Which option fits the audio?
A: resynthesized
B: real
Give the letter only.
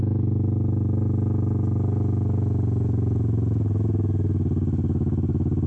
B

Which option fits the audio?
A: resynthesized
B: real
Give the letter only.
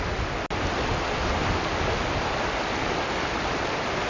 B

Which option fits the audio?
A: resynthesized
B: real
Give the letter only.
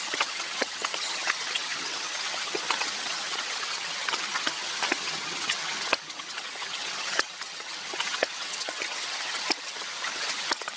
A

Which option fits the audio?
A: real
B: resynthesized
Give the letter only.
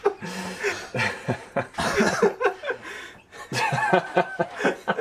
A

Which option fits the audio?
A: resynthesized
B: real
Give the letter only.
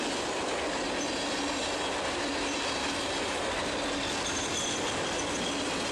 B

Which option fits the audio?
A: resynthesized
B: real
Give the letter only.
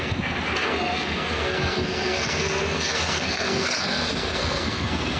A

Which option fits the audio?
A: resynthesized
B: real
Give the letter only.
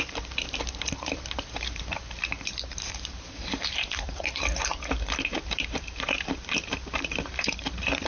A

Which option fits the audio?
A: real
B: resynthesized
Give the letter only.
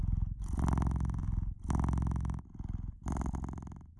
A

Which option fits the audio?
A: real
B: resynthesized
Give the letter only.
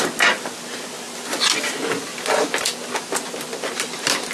A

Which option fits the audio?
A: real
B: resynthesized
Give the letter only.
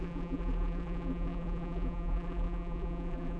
B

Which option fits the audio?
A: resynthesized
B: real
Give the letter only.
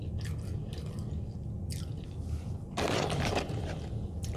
B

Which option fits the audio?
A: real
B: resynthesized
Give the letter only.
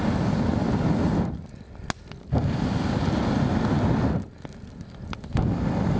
A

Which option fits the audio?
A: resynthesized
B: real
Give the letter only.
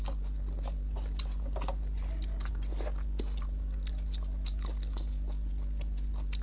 B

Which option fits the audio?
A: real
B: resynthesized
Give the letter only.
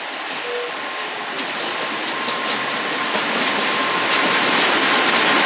A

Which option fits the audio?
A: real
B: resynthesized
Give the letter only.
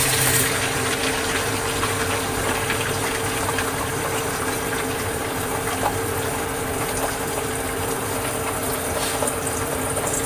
B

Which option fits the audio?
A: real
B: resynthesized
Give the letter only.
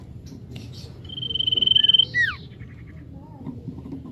A